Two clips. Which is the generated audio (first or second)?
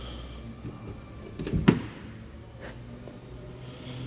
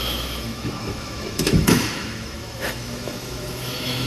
second